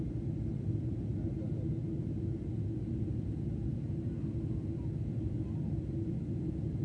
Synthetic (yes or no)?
no